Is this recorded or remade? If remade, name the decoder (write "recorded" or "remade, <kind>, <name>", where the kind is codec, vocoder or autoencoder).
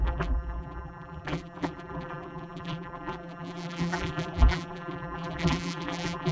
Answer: remade, vocoder, BigVGAN v2